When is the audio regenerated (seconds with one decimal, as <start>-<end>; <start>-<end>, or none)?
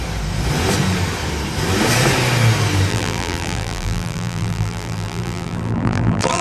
2.9-6.4